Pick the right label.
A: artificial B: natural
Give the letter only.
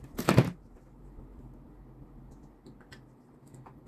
B